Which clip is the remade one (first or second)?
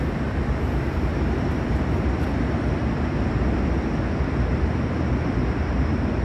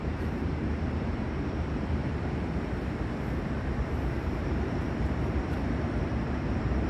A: second